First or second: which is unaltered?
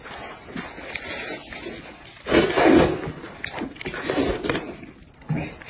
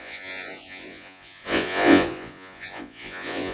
first